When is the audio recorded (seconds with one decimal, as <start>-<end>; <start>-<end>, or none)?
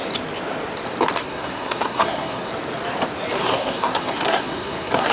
0.0-1.2; 2.5-3.4